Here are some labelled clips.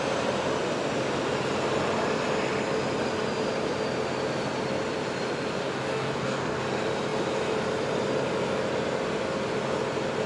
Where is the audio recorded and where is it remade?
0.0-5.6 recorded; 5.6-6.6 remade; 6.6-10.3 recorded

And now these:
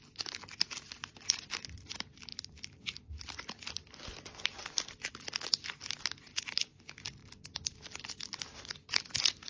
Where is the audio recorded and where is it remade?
0.0-9.5 recorded